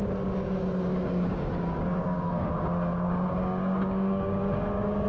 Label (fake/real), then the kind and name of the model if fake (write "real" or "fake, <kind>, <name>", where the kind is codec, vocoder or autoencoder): fake, codec, DAC